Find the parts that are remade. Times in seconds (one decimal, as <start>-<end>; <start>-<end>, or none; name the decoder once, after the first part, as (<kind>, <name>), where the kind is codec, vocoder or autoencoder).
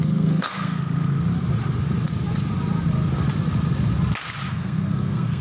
0.0-1.3 (codec, SNAC); 4.5-5.4